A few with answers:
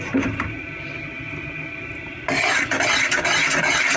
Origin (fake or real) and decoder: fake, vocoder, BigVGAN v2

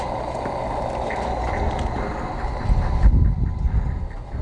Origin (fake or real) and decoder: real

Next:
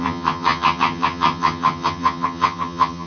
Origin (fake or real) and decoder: fake, vocoder, HiFi-GAN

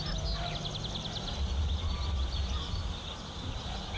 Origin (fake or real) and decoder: real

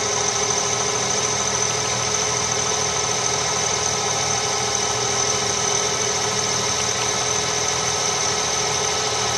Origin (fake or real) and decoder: real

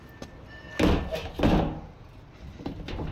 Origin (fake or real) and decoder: real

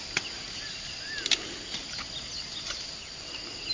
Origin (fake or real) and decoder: real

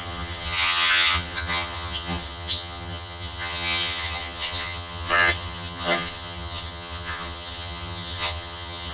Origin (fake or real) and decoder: fake, vocoder, HiFi-GAN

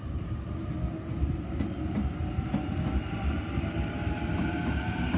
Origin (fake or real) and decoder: real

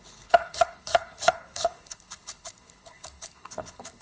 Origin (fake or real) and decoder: fake, codec, HILCodec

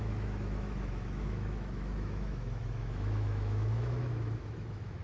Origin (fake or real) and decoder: fake, autoencoder, DAC-VAE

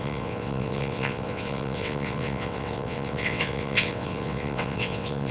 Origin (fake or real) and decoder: fake, vocoder, WaveNeXt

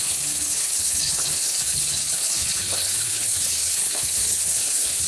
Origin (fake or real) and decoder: fake, codec, HILCodec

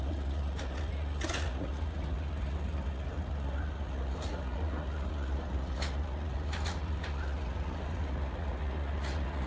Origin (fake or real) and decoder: fake, vocoder, Vocos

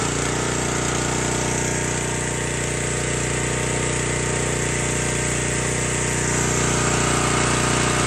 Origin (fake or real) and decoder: real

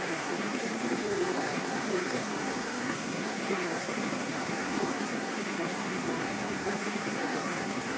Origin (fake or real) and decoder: fake, codec, SNAC